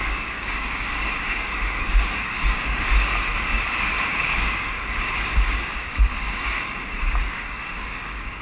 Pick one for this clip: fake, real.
fake